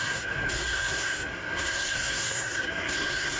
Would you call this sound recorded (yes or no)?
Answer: no